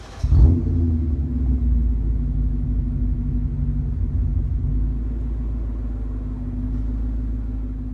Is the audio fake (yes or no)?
no